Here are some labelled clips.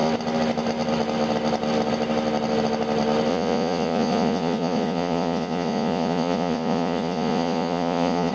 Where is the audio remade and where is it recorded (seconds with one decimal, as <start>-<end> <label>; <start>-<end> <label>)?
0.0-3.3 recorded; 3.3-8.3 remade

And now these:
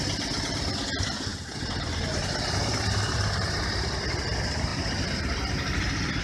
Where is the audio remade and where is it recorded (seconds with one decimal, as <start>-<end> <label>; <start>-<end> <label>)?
0.0-1.3 recorded; 1.3-4.0 remade; 4.0-4.7 recorded; 4.7-5.2 remade; 5.2-6.2 recorded

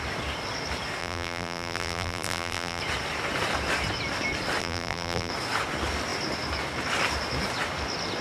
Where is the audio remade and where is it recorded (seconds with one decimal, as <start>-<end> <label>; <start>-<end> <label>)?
0.0-1.0 recorded; 1.0-2.8 remade; 2.8-4.6 recorded; 4.6-5.3 remade; 5.3-8.2 recorded